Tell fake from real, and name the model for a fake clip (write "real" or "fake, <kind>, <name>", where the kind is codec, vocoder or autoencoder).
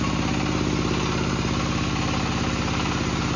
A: real